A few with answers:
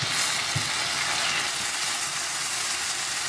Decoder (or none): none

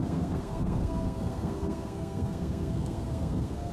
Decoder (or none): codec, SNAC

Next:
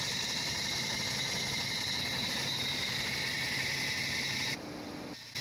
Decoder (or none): none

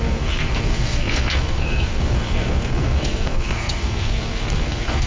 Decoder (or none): codec, SNAC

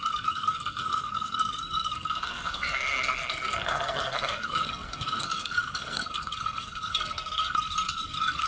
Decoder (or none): codec, SNAC